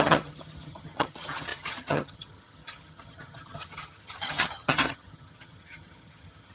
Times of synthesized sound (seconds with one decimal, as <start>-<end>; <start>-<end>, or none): 0.0-6.5